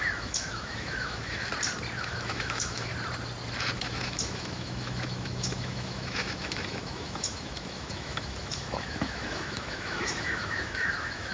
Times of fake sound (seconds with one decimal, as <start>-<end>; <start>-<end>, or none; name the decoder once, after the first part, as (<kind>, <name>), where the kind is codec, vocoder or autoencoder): 0.0-1.5 (autoencoder, DAC-VAE); 2.0-2.9; 3.8-11.3